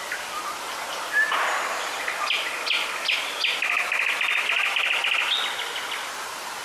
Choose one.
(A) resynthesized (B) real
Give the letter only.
B